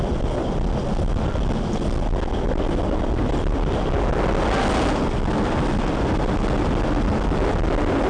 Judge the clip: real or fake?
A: real